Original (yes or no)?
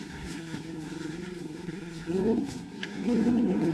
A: no